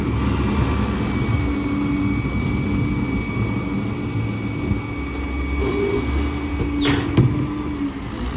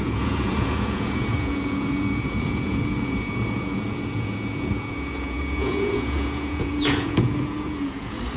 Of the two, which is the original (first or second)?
first